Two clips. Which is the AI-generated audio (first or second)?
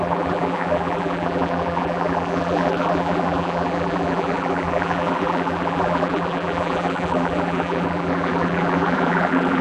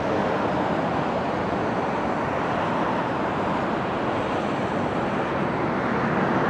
first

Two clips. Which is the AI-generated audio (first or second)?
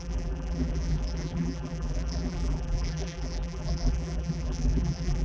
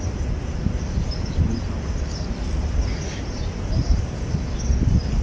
first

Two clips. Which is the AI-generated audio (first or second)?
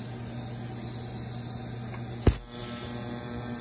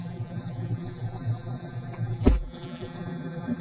second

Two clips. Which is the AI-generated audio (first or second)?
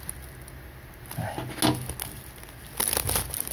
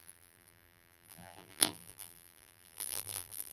second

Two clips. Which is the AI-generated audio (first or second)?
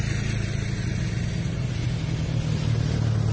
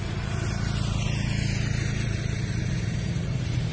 second